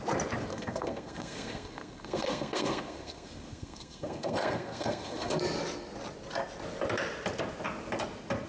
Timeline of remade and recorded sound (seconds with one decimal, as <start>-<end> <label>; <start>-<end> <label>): 0.0-0.5 recorded; 0.5-5.4 remade; 5.4-8.5 recorded